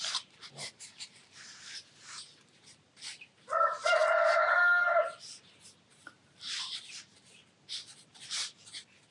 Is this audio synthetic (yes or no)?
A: yes